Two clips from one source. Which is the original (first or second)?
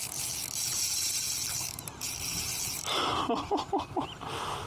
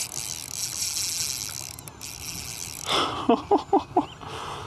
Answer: second